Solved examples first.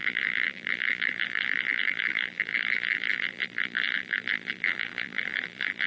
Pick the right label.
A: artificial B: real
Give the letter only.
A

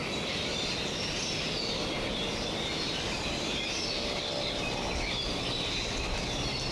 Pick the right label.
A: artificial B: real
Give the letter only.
B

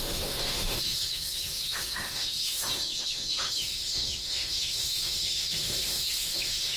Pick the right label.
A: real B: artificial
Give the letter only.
B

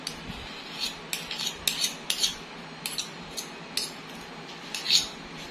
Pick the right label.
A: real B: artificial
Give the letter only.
A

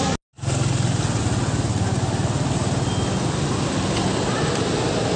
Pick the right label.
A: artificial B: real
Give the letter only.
B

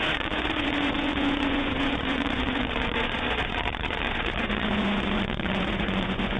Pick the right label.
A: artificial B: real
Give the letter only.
A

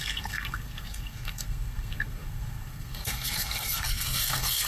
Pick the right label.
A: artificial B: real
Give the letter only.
A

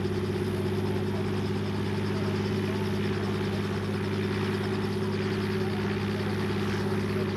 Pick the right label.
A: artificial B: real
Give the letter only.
B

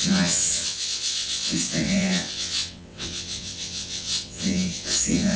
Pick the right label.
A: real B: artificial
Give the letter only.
B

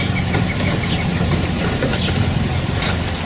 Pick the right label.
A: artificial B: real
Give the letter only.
B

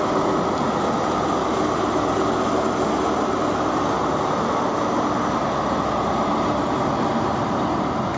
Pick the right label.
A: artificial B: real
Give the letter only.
B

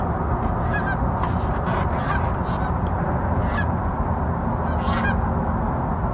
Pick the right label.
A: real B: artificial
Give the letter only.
A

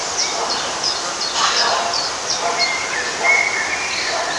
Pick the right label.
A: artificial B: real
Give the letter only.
A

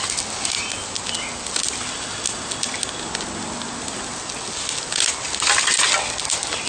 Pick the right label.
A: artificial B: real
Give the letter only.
B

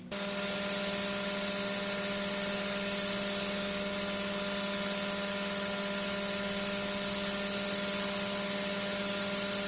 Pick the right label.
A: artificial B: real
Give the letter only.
B